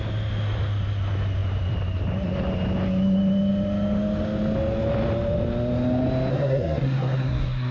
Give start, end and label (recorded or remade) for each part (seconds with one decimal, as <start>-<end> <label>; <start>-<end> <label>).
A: 0.0-6.3 recorded; 6.3-7.7 remade